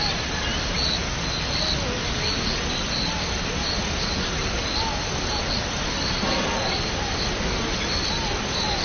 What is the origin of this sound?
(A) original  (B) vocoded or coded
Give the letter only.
A